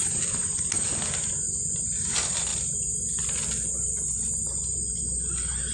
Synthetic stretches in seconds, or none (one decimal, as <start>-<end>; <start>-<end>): none